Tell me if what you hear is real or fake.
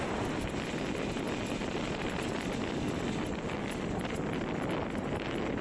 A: real